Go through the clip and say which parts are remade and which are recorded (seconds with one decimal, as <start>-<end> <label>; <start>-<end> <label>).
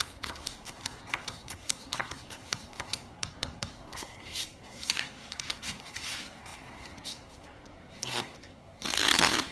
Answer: 0.0-9.5 remade